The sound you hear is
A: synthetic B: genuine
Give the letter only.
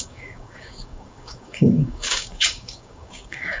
A